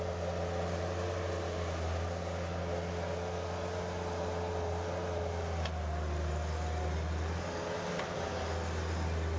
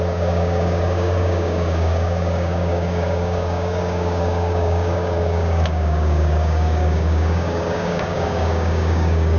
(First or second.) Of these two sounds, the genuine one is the first